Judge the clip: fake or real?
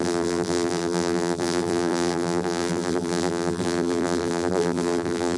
fake